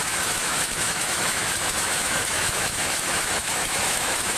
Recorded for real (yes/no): no